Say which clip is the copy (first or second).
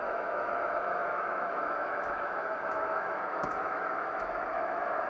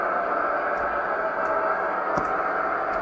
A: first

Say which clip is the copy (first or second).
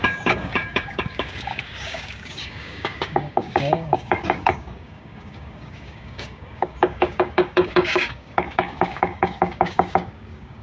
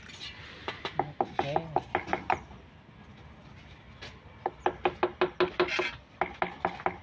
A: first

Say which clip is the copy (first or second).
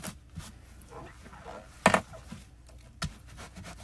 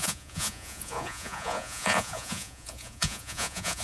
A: second